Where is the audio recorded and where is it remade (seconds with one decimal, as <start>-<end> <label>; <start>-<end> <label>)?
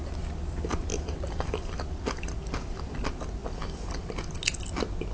0.0-5.1 recorded